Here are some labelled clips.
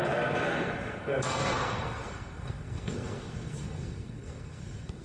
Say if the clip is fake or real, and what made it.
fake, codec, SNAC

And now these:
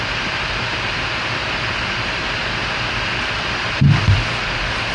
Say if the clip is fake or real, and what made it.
real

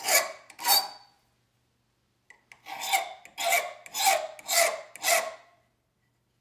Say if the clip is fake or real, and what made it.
real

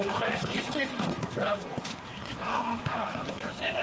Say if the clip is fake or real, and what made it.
fake, codec, SNAC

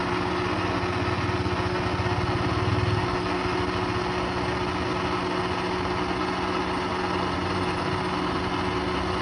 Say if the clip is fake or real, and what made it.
real